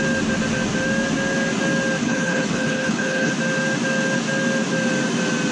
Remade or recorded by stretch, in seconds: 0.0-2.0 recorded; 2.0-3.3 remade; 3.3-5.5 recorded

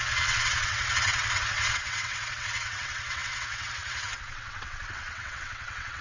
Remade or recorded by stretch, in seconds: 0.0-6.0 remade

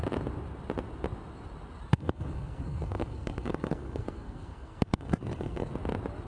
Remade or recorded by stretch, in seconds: 0.0-1.9 recorded; 1.9-5.7 remade; 5.7-6.3 recorded

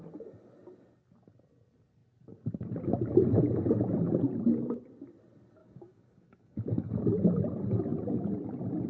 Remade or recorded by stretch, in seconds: 0.0-5.6 recorded; 5.6-6.9 remade; 6.9-8.9 recorded